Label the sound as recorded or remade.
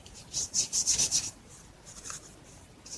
remade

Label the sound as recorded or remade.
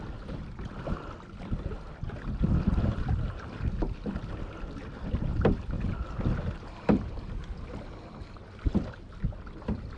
recorded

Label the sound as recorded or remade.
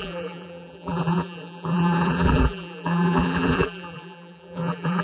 remade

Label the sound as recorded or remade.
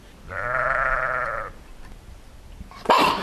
remade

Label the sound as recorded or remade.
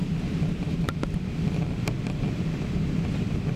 recorded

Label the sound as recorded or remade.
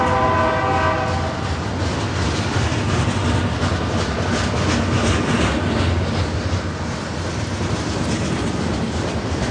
recorded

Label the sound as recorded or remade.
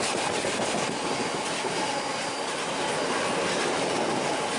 recorded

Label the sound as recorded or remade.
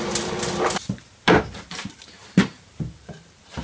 remade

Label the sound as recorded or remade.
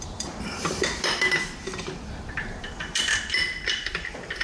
remade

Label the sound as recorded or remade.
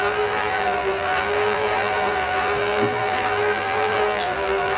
remade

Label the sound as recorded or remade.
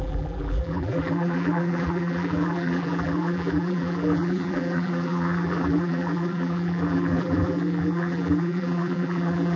remade